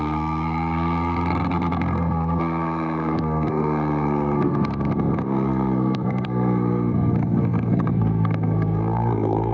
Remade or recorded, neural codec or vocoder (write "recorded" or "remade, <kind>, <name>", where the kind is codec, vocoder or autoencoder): remade, codec, SNAC